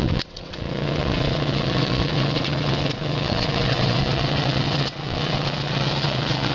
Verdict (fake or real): fake